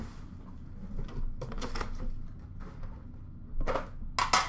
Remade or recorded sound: recorded